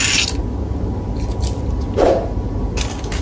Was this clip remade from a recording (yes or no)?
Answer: no